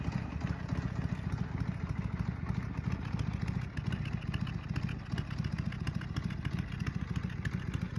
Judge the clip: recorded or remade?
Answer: recorded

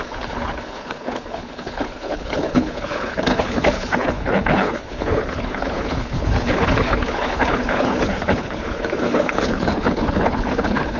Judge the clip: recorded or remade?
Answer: remade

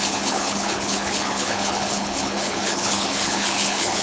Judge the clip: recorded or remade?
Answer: remade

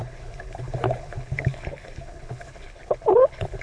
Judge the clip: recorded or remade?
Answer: remade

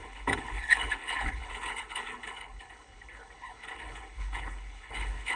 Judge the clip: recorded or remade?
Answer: remade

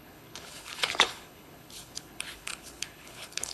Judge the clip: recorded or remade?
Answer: remade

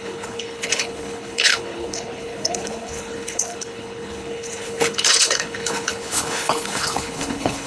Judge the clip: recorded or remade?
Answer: remade